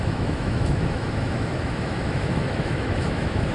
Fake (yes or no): yes